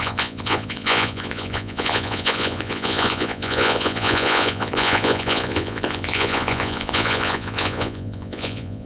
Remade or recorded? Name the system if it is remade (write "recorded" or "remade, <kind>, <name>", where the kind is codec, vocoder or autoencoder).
remade, vocoder, Vocos